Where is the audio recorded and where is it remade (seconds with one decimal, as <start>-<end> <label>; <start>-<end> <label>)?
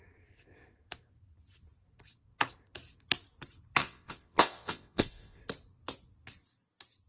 0.0-3.8 recorded; 3.8-5.4 remade; 5.4-7.1 recorded